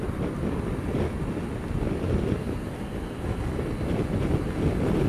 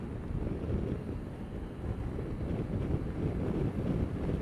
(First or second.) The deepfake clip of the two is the second